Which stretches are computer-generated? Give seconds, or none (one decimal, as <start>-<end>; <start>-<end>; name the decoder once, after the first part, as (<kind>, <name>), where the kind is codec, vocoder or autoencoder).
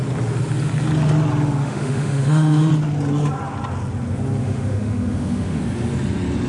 1.6-2.7 (autoencoder, DAC-VAE); 4.4-5.6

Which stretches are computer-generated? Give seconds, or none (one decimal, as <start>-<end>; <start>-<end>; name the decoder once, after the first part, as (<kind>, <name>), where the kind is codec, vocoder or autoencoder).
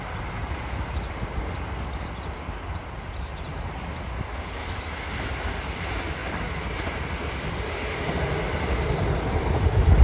4.6-5.3 (autoencoder, DAC-VAE)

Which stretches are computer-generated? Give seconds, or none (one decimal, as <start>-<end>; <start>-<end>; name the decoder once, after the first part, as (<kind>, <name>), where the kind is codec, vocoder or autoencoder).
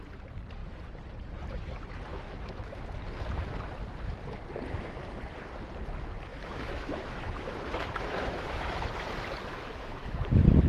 2.1-2.8 (autoencoder, DAC-VAE); 6.3-9.1; 9.5-10.2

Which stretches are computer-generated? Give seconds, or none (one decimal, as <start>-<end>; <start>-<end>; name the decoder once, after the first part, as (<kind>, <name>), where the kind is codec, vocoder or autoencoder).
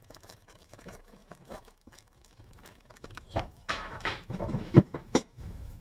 0.0-5.8 (autoencoder, DAC-VAE)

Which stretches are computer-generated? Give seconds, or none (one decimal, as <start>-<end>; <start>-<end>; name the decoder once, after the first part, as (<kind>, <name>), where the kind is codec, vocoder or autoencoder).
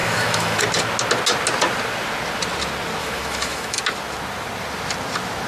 0.0-0.6 (autoencoder, DAC-VAE); 3.0-3.8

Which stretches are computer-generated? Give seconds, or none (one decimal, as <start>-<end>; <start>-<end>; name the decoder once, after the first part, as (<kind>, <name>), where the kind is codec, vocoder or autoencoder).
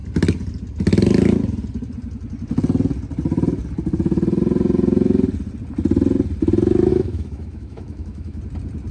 6.9-8.4 (autoencoder, DAC-VAE)